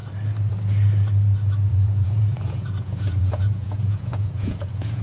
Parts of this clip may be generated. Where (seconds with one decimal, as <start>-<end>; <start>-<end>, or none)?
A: 1.7-5.0